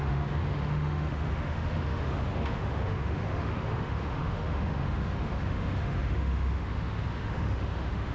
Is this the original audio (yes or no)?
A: no